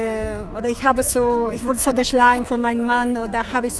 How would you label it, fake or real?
fake